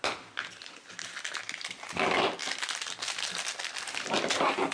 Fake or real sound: real